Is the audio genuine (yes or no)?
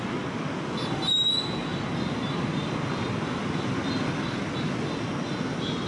yes